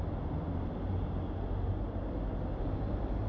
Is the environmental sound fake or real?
real